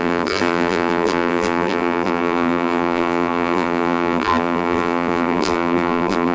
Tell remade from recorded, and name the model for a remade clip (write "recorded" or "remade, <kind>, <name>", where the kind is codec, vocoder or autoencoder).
remade, vocoder, BigVGAN v2